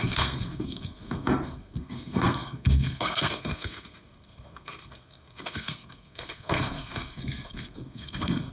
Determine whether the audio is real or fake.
fake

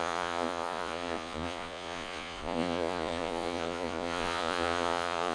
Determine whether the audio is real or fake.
fake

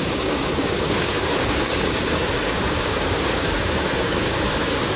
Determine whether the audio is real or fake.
fake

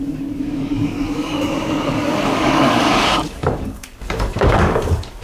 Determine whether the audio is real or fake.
fake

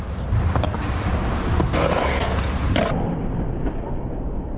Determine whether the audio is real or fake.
real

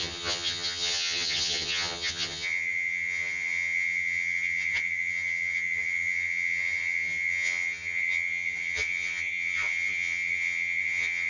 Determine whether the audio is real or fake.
fake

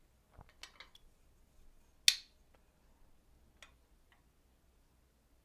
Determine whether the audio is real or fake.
real